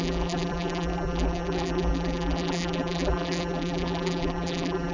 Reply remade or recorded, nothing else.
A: remade